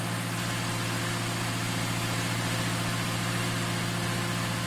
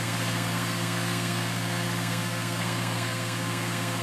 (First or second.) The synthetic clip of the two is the second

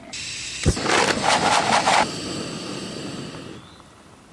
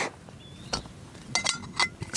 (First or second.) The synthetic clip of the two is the first